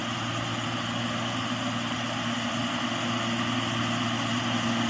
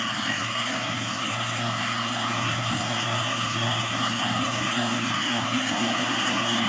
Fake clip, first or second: second